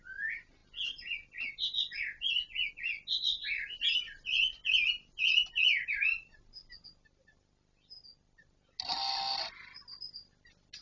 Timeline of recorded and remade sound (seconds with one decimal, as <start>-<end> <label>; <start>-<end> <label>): 0.0-10.8 recorded